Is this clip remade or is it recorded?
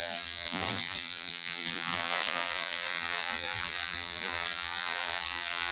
remade